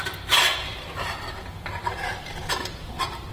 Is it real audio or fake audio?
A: fake